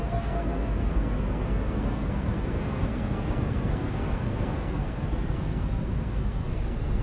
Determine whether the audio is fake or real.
fake